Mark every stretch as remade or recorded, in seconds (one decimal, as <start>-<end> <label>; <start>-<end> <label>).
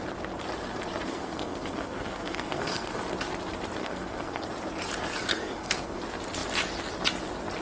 0.0-1.1 recorded; 1.1-3.0 remade; 3.0-3.8 recorded; 3.8-4.5 remade; 4.5-5.3 recorded; 5.3-6.0 remade; 6.0-7.6 recorded